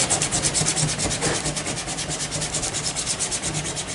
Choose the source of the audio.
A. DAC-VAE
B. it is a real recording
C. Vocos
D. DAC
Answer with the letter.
B